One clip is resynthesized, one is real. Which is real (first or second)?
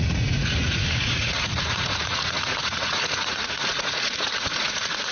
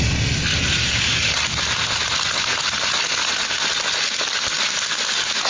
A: second